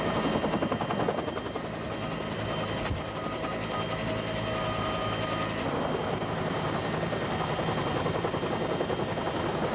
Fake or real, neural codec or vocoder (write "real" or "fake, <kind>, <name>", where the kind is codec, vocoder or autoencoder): real